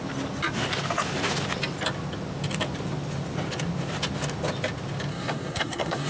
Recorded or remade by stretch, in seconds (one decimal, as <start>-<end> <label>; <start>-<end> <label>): 0.0-5.1 recorded; 5.1-6.1 remade